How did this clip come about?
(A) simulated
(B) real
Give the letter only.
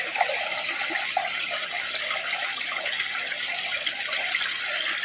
B